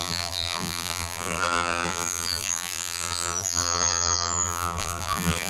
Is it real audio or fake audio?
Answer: fake